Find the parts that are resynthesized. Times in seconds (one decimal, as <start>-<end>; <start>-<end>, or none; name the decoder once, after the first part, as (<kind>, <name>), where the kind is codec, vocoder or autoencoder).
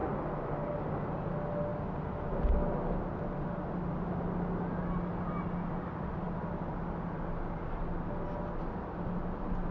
none